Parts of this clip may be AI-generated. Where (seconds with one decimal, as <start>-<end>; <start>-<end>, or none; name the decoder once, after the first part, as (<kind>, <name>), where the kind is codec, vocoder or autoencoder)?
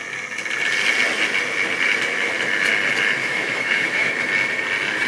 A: 3.2-4.1 (autoencoder, DAC-VAE)